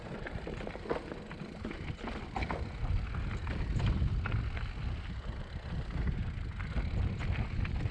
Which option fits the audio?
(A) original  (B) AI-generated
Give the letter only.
A